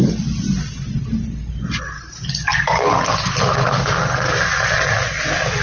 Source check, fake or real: real